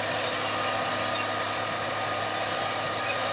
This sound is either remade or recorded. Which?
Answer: recorded